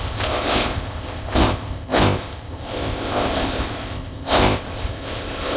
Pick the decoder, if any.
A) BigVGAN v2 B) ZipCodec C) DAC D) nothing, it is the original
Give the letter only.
B